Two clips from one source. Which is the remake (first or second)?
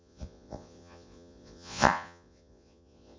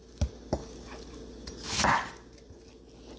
first